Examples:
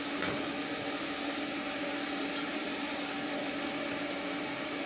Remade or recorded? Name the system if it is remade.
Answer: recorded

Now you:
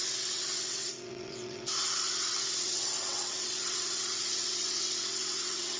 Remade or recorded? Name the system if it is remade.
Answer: remade, vocoder, WaveNeXt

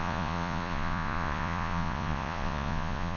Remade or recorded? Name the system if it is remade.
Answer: remade, vocoder, Vocos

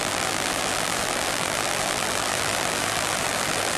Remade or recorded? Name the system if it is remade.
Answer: remade, vocoder, BigVGAN v2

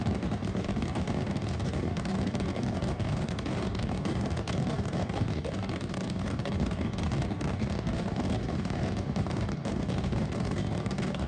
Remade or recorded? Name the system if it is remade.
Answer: remade, codec, DAC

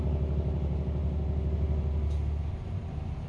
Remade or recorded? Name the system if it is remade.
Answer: recorded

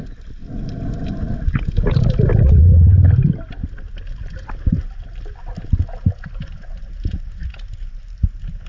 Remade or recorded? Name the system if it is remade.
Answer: recorded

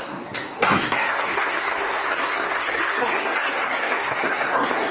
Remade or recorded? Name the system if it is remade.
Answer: remade, codec, SNAC